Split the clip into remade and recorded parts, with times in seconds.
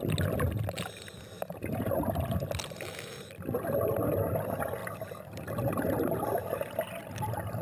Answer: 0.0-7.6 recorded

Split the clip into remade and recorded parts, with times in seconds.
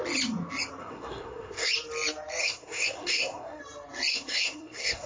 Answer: 0.0-0.8 recorded; 0.8-1.7 remade; 1.7-2.4 recorded; 2.4-3.6 remade; 3.6-4.1 recorded; 4.1-5.1 remade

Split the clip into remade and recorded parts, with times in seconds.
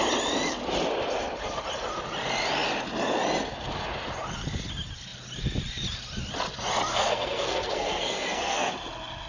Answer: 0.0-6.9 recorded; 6.9-8.7 remade; 8.7-9.3 recorded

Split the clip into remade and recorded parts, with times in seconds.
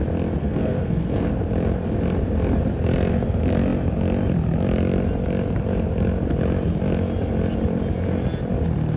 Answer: 0.0-0.4 recorded; 0.4-1.3 remade; 1.3-9.0 recorded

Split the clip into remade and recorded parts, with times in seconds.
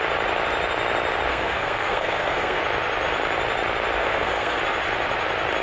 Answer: 0.0-1.3 recorded; 1.3-2.6 remade; 2.6-4.0 recorded; 4.0-4.6 remade; 4.6-5.6 recorded